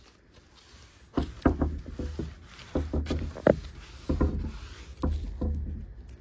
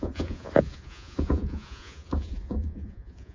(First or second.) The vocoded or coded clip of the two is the second